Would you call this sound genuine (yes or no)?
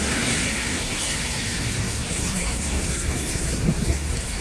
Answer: no